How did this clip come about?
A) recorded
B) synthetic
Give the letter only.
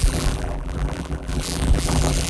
B